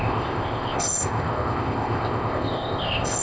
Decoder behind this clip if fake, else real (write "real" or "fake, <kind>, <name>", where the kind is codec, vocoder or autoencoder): fake, codec, ZipCodec